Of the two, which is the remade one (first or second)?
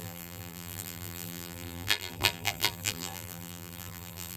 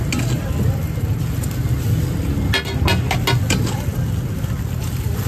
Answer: first